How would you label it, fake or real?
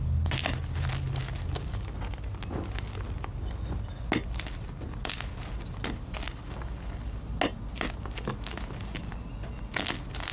real